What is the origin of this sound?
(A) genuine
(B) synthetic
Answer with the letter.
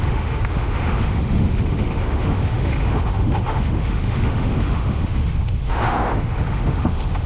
B